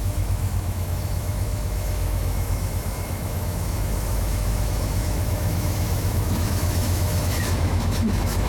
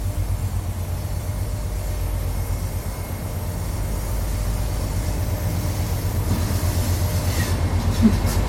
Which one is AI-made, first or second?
first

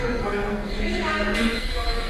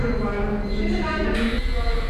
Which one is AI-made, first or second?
first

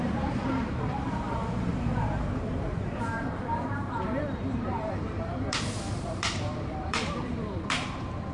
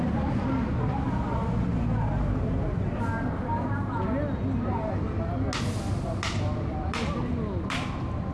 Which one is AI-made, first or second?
first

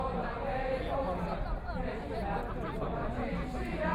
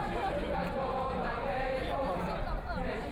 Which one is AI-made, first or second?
second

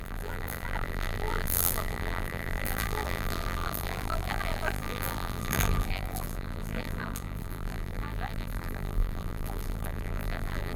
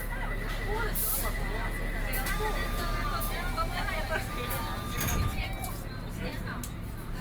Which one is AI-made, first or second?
first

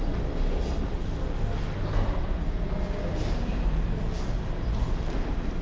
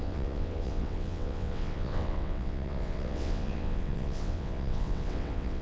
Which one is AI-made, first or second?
second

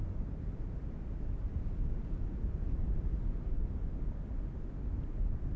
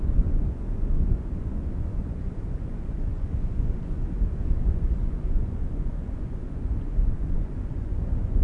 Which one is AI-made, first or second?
second